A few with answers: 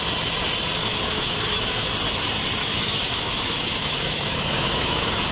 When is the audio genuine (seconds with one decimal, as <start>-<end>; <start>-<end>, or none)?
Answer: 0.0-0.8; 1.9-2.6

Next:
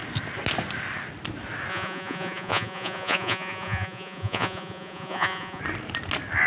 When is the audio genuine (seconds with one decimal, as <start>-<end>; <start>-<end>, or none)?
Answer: 0.0-1.7; 5.6-6.5

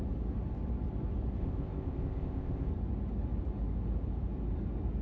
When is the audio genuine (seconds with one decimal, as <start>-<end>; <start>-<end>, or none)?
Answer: 0.0-1.4; 2.7-5.0

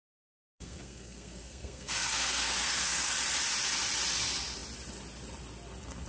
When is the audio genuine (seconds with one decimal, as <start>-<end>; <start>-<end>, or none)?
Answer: 3.1-6.1